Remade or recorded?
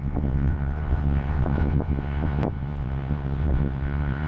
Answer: remade